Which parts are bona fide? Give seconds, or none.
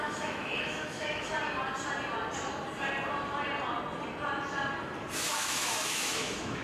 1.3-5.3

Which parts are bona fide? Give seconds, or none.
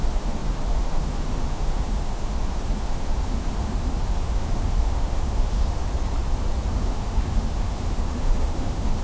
5.8-6.7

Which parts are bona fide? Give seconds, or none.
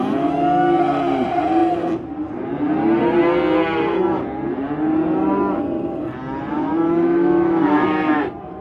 0.0-6.5; 8.2-8.6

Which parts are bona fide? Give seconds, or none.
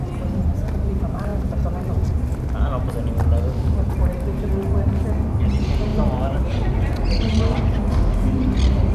0.0-8.9